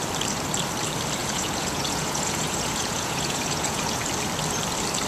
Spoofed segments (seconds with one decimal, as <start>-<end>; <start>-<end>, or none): 1.2-4.0